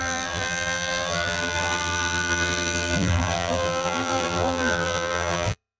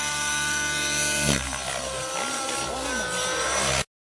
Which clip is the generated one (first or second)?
first